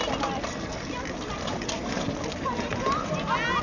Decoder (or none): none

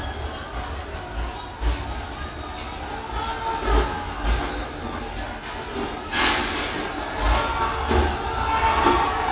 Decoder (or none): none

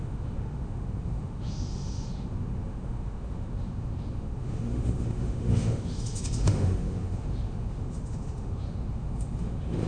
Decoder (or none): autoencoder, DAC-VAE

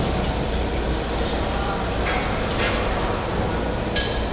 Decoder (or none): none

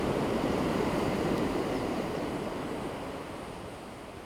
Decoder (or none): vocoder, BigVGAN v2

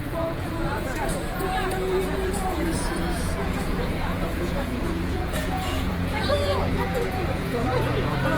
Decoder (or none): vocoder, Vocos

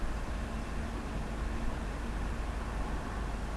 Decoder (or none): none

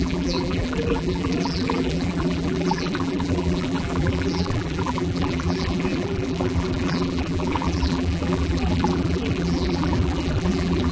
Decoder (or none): vocoder, BigVGAN v2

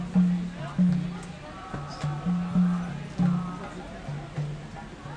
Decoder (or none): none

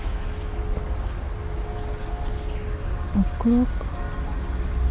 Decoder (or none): none